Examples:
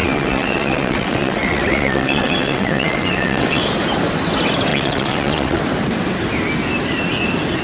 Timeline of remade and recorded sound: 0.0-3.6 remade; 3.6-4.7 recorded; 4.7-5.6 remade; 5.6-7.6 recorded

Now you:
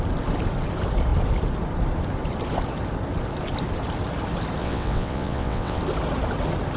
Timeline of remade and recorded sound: 0.0-4.6 recorded; 4.6-5.8 remade; 5.8-6.8 recorded

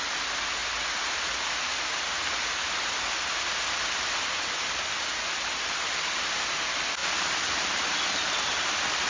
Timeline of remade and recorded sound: 0.0-9.1 recorded

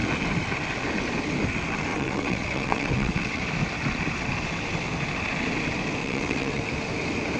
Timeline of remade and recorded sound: 0.0-1.9 recorded; 1.9-3.4 remade; 3.4-6.0 recorded; 6.0-6.6 remade; 6.6-7.4 recorded

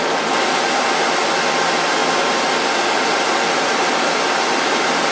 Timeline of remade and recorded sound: 0.0-5.1 recorded

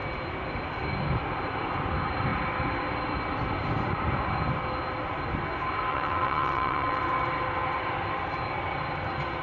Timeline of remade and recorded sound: 0.0-5.9 recorded; 5.9-7.0 remade; 7.0-9.4 recorded

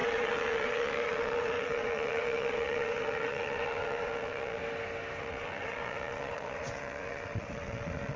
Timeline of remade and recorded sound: 0.0-4.6 remade; 4.6-5.2 recorded; 5.2-8.2 remade